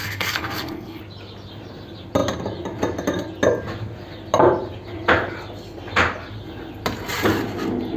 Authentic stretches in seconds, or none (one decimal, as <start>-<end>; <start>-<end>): 1.0-8.0